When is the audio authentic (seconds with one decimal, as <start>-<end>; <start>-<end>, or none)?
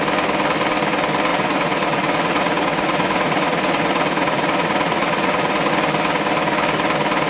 0.0-1.3; 5.7-7.3